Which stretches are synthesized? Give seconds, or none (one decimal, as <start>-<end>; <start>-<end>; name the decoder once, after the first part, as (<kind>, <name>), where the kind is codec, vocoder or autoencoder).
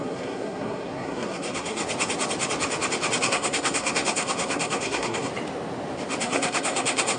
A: 0.0-1.8 (codec, SNAC); 3.2-5.3; 6.2-7.2